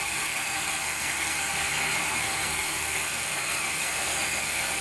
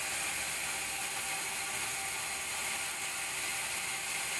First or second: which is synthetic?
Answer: first